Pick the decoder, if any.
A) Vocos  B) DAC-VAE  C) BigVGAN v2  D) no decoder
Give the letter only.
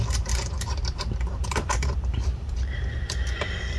C